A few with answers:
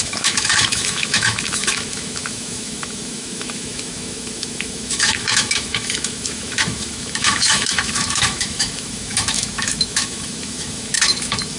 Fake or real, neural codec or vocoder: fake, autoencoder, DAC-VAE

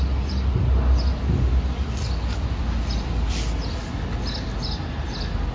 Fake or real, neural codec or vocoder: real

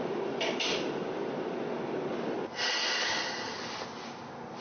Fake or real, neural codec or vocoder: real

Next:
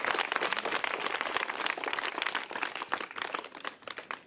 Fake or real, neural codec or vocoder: real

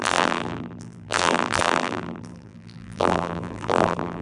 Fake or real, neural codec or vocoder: fake, vocoder, BigVGAN v2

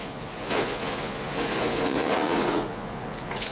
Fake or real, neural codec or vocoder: fake, vocoder, Vocos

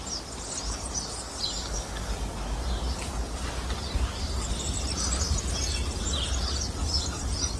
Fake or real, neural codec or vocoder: real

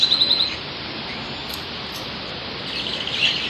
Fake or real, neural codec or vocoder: real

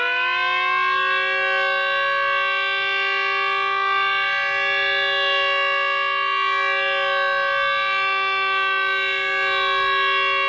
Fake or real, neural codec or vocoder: real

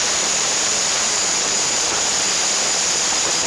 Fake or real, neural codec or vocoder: fake, vocoder, BigVGAN v2